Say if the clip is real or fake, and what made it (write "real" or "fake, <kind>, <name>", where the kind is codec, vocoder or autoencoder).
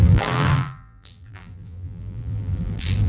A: fake, vocoder, BigVGAN v2